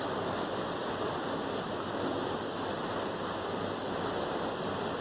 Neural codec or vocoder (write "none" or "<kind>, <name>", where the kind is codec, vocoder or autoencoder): none